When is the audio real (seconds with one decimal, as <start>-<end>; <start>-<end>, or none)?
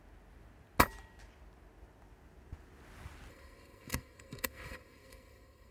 0.0-3.3